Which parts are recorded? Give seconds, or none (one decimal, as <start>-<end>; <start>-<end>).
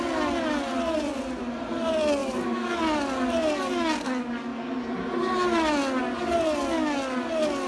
0.0-7.7